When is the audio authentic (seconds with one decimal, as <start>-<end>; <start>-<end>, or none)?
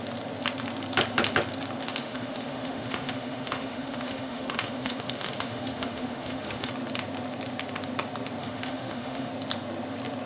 0.0-1.8; 6.7-8.4; 9.3-10.3